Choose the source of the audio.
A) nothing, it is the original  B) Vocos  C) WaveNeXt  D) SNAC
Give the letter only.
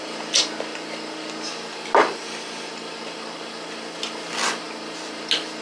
A